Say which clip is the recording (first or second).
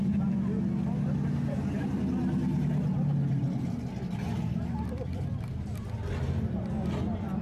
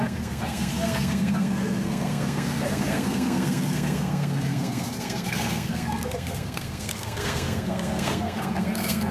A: first